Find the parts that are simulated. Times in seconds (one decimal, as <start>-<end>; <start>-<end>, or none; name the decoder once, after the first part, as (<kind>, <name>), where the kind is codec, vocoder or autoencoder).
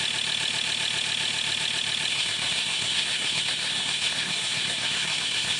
2.1-5.6 (codec, SNAC)